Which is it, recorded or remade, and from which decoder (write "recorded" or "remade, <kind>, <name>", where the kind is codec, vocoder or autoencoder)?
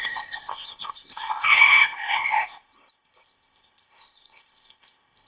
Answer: remade, codec, ZipCodec